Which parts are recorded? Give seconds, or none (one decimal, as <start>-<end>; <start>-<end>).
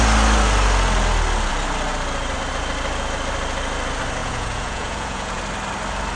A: 0.0-4.2; 5.4-6.2